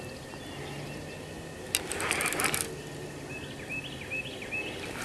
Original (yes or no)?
yes